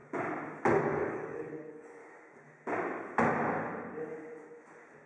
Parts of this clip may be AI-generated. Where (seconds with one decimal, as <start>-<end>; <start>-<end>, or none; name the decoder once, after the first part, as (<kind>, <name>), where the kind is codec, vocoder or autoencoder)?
0.8-2.0 (codec, DAC)